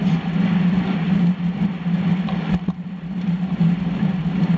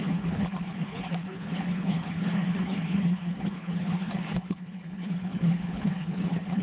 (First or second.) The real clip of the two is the first